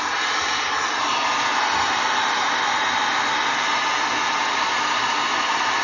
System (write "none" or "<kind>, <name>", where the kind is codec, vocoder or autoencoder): none